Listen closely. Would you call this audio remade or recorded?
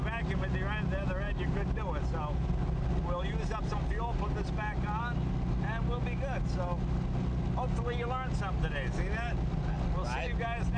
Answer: recorded